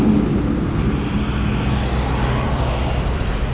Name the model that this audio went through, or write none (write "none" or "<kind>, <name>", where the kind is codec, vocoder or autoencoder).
none